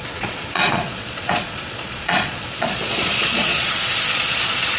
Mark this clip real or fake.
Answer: fake